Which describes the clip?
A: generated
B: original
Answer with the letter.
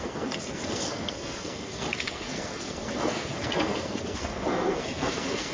A